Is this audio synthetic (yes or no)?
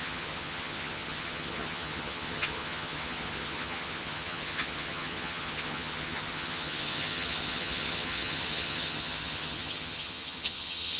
yes